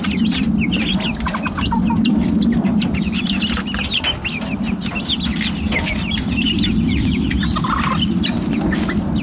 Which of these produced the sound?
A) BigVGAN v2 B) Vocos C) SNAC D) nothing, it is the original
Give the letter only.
D